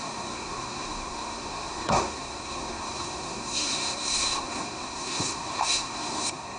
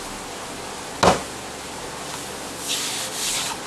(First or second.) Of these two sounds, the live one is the second